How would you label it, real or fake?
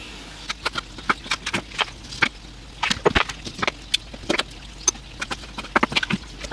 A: real